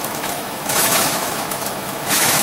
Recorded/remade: remade